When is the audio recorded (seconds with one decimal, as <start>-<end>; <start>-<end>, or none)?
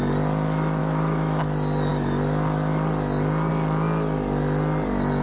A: 0.0-0.8; 1.4-5.2